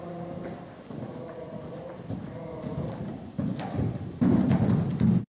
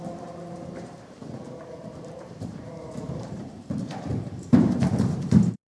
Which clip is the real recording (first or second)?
first